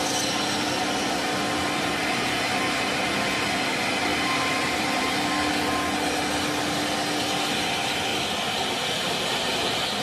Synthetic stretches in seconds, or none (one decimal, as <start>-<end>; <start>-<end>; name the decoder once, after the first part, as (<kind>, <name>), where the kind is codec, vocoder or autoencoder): 4.1-5.0 (vocoder, BigVGAN v2)